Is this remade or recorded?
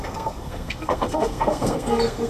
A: remade